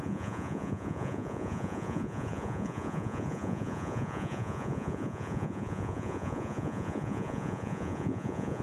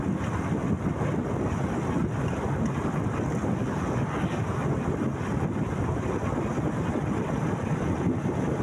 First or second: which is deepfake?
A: first